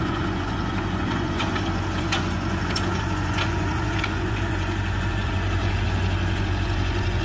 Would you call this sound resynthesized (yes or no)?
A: yes